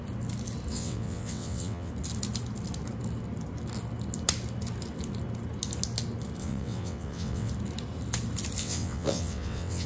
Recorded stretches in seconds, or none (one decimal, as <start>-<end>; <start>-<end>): 0.0-0.7; 1.9-6.4; 7.5-8.6